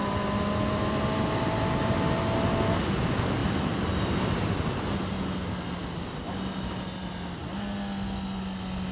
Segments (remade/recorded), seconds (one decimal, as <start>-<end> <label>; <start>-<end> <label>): 0.0-8.9 recorded